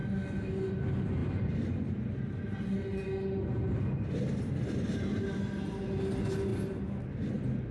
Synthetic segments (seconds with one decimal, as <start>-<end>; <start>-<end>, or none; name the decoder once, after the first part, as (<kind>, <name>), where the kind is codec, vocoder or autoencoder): none